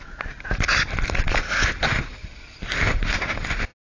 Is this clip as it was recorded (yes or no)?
yes